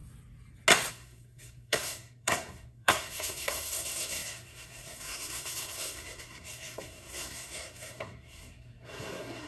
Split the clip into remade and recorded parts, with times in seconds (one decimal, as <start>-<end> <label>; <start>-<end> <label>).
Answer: 0.0-0.9 recorded; 0.9-9.5 remade